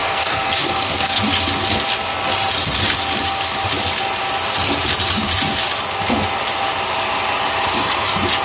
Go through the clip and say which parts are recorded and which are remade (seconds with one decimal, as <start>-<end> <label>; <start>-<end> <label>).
0.0-1.2 remade; 1.2-8.4 recorded

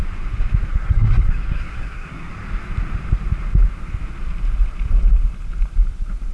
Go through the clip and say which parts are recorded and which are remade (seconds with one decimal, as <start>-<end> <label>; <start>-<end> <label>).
0.0-0.7 recorded; 0.7-2.3 remade; 2.3-6.3 recorded

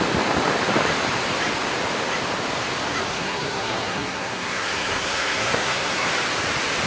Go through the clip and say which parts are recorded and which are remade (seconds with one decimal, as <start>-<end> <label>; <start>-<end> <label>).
0.0-3.1 recorded; 3.1-6.1 remade; 6.1-6.9 recorded

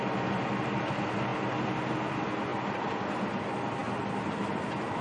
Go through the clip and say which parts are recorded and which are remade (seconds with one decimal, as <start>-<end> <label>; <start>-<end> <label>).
0.0-5.0 recorded

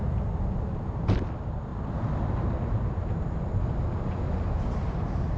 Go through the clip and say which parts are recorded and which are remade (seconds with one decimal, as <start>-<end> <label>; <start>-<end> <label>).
0.0-5.4 recorded

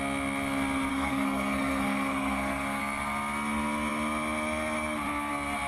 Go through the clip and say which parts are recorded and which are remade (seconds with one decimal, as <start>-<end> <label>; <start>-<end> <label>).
0.0-0.9 recorded; 0.9-2.8 remade; 2.8-5.7 recorded